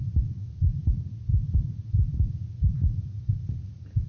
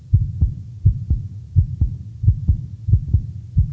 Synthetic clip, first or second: first